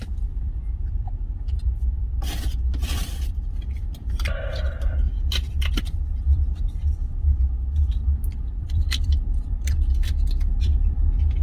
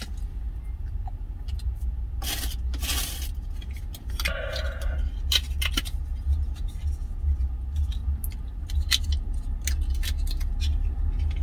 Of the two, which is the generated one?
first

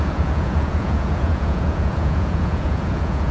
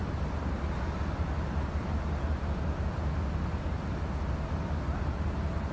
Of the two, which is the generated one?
first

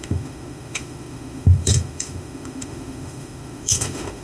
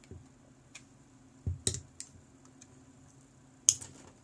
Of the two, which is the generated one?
first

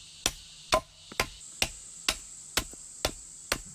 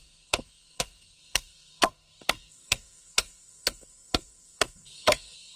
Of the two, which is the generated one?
second